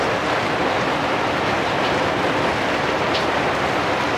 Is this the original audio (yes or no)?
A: yes